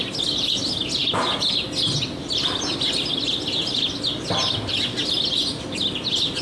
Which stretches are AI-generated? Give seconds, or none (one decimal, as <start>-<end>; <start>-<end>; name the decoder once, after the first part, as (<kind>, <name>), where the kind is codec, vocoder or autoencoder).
none